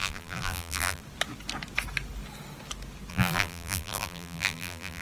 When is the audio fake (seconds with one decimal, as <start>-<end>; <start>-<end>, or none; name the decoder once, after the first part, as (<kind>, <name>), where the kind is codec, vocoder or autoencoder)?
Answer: 0.0-1.0 (vocoder, BigVGAN v2); 3.1-5.0